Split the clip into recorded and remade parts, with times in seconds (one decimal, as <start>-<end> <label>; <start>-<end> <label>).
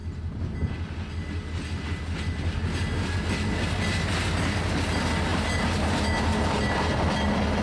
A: 0.0-5.3 recorded; 5.3-7.6 remade